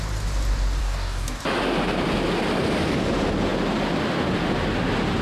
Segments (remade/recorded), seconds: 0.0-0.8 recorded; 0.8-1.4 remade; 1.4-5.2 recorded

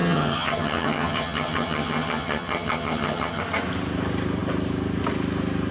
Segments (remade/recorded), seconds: 0.0-3.4 remade; 3.4-5.7 recorded

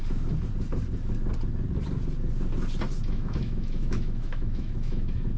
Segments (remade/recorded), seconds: 0.0-3.1 recorded; 3.1-5.4 remade